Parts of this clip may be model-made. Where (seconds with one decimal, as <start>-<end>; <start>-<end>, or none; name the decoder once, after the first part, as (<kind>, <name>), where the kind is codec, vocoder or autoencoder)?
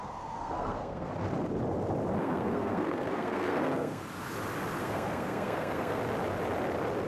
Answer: 0.0-1.1 (codec, SNAC); 2.2-4.0; 4.8-6.0